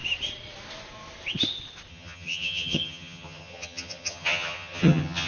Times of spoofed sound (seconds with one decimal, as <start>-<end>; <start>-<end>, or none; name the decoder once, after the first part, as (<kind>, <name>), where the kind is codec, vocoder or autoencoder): 1.9-5.3 (vocoder, HiFi-GAN)